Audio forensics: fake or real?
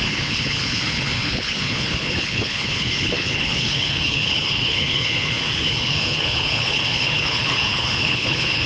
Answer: fake